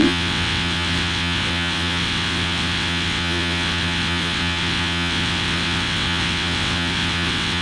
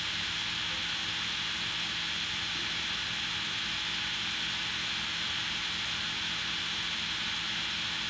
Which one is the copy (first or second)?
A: first